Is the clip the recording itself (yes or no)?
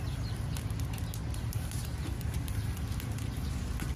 yes